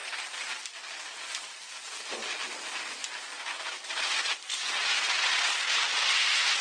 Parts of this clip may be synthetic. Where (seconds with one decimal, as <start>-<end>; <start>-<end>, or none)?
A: none

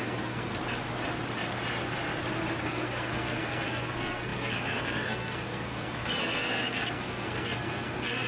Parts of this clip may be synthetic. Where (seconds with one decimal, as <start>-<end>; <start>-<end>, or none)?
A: 0.0-0.5; 2.6-8.3

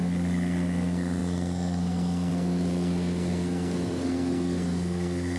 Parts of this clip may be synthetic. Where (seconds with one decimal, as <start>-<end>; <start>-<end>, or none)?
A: 0.0-5.4

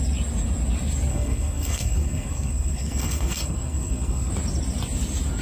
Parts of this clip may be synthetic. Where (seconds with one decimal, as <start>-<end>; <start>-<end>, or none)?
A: 1.1-4.3

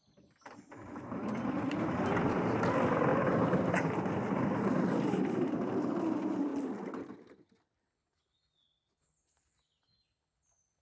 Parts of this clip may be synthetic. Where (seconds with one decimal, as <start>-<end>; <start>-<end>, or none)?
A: none